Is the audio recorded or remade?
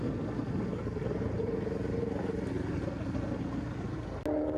recorded